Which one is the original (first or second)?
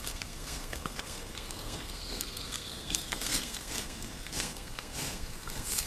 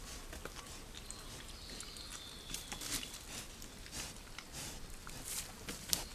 second